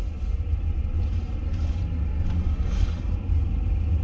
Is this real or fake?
real